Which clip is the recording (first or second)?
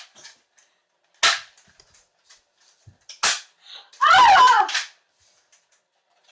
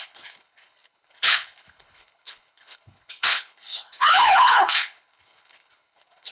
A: first